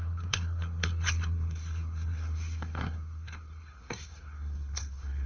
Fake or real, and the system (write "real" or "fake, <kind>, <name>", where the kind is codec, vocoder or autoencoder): fake, codec, SNAC